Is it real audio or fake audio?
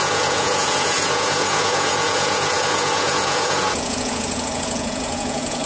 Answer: fake